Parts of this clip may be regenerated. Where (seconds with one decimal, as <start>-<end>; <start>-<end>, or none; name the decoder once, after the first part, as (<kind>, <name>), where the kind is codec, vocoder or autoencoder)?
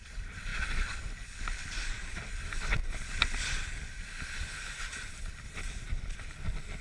none